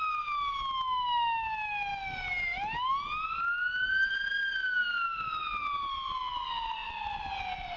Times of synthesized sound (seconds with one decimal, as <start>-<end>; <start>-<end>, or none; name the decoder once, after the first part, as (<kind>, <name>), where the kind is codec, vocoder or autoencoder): none